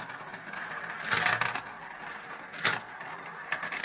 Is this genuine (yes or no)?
yes